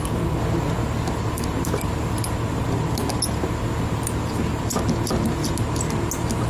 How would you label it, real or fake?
real